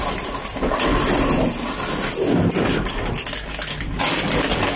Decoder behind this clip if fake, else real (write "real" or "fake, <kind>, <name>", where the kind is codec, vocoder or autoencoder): real